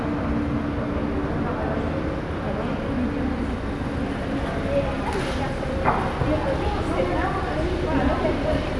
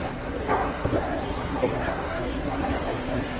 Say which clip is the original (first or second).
first